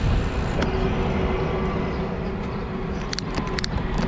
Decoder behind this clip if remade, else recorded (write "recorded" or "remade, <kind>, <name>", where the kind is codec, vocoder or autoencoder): recorded